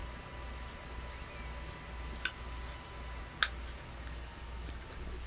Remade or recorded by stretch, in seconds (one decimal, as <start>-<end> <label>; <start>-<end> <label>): 0.0-5.3 recorded